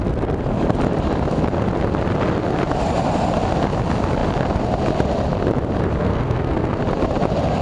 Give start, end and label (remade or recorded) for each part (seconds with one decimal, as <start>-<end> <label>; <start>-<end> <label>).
0.0-6.0 recorded; 6.0-6.8 remade; 6.8-7.6 recorded